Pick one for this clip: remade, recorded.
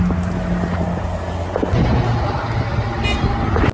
recorded